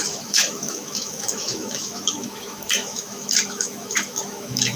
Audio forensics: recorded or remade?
remade